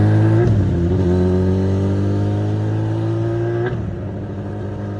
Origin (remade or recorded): recorded